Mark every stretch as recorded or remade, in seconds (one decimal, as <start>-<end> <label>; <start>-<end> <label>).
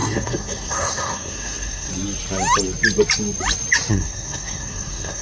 0.0-1.9 remade; 1.9-3.9 recorded; 3.9-5.2 remade